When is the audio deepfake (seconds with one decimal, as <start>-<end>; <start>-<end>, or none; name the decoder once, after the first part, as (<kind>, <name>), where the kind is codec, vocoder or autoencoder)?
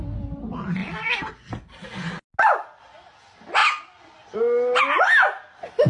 none